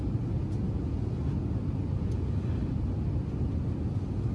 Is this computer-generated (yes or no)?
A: no